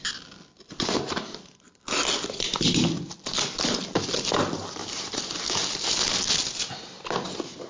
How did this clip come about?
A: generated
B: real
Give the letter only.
B